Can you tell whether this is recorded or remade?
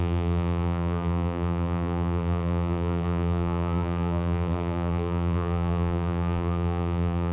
remade